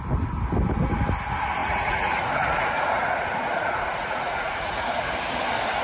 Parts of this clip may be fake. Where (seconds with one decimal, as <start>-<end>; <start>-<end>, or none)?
1.6-5.1